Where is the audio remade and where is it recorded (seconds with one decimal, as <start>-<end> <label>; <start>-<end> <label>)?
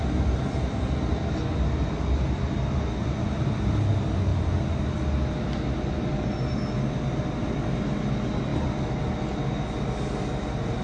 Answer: 0.0-10.8 recorded